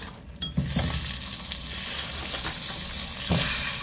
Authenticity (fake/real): real